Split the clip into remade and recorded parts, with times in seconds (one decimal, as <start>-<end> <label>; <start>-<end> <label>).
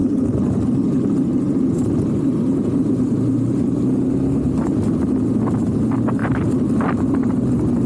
0.0-4.6 remade; 4.6-7.9 recorded